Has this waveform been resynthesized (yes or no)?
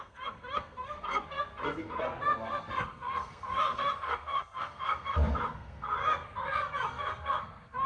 yes